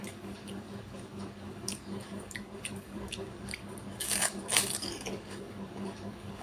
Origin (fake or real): fake